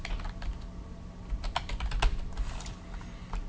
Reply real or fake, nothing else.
real